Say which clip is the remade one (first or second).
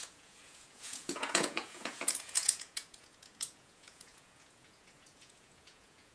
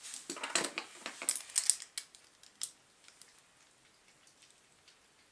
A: first